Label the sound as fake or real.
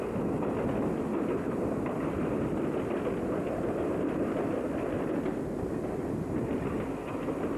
real